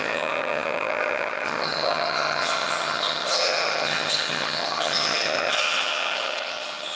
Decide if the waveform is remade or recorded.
remade